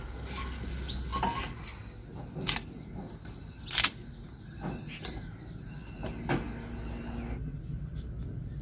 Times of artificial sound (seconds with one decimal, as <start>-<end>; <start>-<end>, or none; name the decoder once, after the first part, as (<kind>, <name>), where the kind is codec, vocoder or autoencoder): none